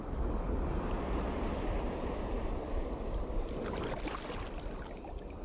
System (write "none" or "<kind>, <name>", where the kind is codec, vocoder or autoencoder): none